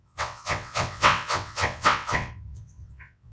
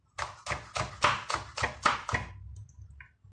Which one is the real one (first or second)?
second